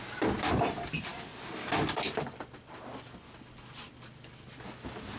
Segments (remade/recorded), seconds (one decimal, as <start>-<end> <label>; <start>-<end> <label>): 0.0-5.2 recorded